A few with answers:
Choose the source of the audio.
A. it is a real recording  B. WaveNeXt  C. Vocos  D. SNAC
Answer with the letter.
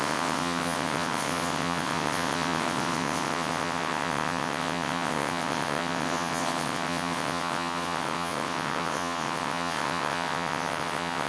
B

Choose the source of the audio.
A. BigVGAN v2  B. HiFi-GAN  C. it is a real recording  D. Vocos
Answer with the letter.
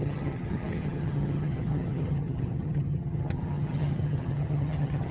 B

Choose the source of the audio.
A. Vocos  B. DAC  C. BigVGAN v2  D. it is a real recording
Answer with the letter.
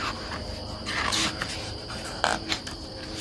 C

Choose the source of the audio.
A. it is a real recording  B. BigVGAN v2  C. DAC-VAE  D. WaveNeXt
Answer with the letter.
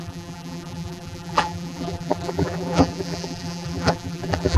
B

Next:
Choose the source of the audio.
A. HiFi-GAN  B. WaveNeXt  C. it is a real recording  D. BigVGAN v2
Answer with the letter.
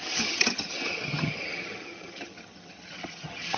A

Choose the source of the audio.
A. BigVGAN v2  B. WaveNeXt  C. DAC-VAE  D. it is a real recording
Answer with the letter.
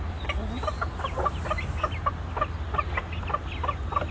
D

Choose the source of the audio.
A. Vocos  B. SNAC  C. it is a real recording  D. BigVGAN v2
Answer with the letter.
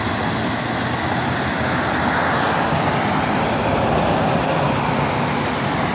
C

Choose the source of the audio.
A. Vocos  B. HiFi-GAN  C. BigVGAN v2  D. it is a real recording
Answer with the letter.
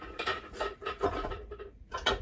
A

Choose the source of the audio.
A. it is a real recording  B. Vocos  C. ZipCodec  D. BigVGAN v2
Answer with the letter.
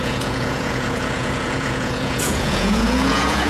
B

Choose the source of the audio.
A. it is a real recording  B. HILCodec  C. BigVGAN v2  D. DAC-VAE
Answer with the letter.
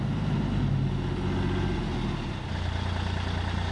A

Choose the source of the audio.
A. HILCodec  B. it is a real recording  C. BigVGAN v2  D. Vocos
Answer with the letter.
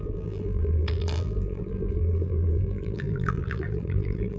C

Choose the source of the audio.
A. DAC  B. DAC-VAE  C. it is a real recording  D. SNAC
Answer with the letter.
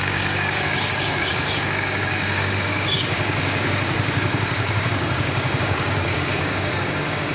A